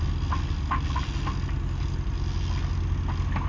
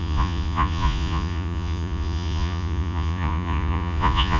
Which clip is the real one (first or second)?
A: first